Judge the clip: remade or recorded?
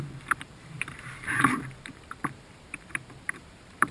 remade